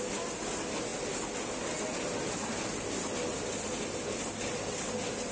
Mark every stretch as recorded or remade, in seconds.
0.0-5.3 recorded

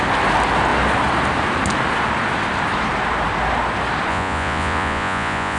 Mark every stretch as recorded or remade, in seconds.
0.0-4.1 recorded; 4.1-5.6 remade

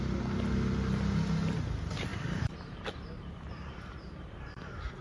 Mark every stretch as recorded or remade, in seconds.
0.0-2.1 recorded; 2.1-5.0 remade

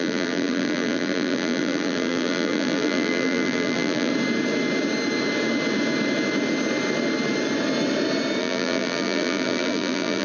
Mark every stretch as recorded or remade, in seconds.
0.0-4.1 remade; 4.1-8.4 recorded; 8.4-10.2 remade

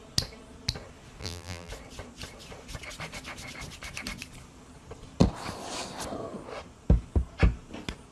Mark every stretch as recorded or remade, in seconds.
0.0-1.2 recorded; 1.2-1.7 remade; 1.7-8.1 recorded

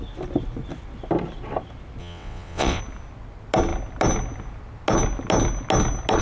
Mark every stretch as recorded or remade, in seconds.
0.0-2.0 recorded; 2.0-2.8 remade; 2.8-6.2 recorded

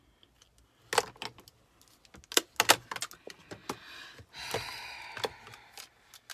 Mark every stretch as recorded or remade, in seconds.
0.0-6.3 recorded